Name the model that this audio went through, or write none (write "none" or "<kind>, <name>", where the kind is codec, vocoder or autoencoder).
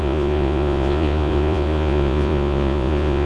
vocoder, Vocos